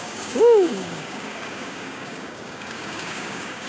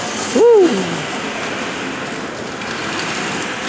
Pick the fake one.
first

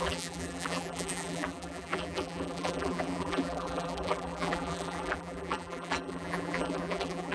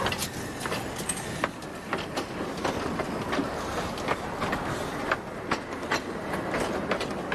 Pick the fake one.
first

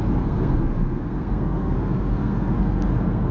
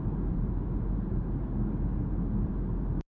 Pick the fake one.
first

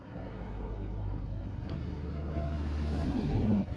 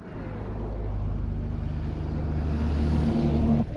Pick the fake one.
first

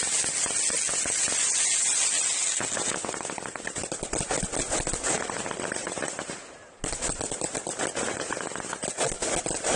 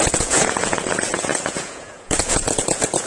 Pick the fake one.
second